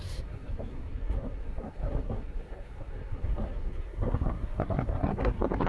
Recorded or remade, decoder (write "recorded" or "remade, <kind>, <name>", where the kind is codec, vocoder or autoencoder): remade, codec, SNAC